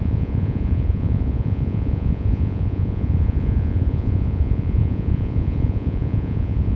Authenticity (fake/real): fake